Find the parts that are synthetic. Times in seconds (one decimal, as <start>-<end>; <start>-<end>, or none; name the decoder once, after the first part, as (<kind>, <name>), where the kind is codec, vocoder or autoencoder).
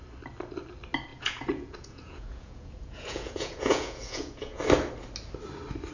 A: 1.1-4.6 (vocoder, Vocos)